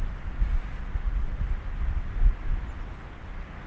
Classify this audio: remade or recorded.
recorded